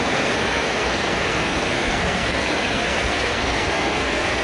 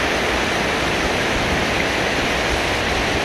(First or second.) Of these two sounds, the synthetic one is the first